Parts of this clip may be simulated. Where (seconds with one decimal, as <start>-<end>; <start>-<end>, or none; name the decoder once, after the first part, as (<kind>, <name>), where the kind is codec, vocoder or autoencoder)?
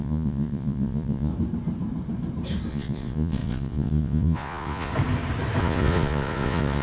0.0-1.3 (vocoder, Vocos); 2.7-4.9; 5.6-6.8